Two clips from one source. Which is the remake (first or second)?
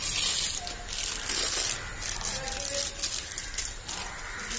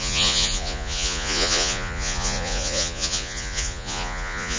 second